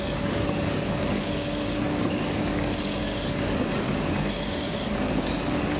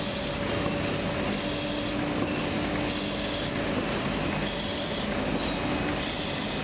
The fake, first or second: first